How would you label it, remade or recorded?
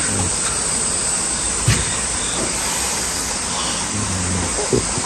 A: recorded